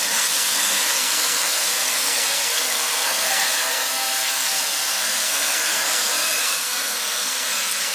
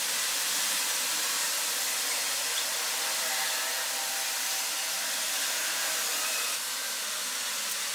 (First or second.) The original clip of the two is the second